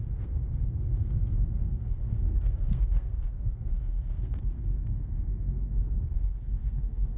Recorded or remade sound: remade